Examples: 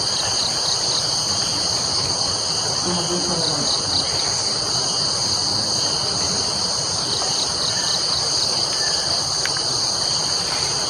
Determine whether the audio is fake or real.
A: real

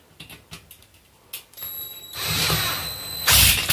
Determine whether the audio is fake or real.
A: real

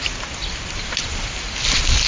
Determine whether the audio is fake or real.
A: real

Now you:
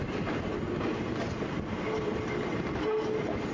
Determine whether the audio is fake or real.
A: real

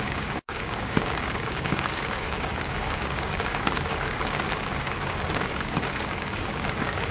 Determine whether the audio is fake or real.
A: fake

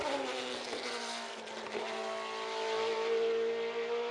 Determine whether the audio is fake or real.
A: real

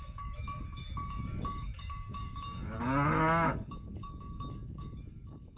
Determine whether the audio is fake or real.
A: fake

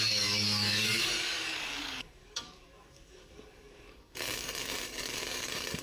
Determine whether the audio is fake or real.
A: fake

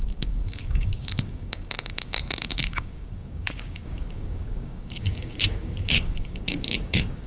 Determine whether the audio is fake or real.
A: fake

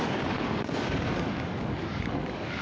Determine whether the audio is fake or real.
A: fake